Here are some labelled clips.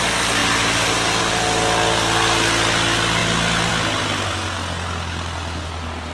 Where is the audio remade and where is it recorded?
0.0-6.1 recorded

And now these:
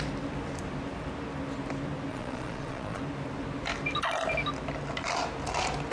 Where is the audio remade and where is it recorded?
0.0-2.1 recorded; 2.1-3.0 remade; 3.0-5.9 recorded

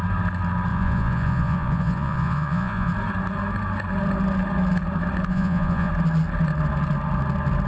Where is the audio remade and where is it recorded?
0.0-0.7 recorded; 0.7-2.9 remade; 2.9-5.3 recorded; 5.3-5.9 remade; 5.9-7.7 recorded

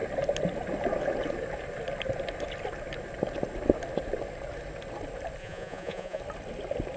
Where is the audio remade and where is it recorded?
0.0-5.4 recorded; 5.4-6.2 remade; 6.2-7.0 recorded

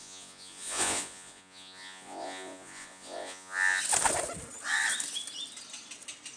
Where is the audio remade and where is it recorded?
0.0-3.8 remade; 3.8-6.4 recorded

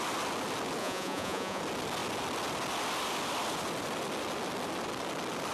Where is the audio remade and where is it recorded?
0.0-0.8 recorded; 0.8-1.6 remade; 1.6-5.5 recorded

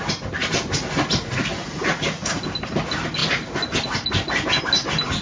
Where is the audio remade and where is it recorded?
0.0-1.6 recorded; 1.6-2.4 remade; 2.4-5.2 recorded